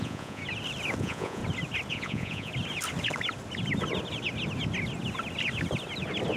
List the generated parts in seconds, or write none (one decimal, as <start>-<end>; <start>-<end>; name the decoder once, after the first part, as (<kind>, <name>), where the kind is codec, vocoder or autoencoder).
0.0-0.4 (vocoder, Vocos); 1.0-1.4; 1.9-2.5